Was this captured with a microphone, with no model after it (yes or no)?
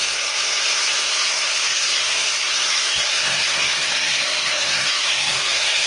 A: no